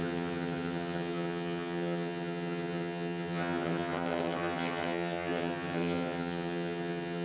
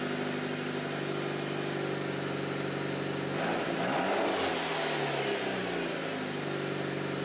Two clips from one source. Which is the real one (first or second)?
second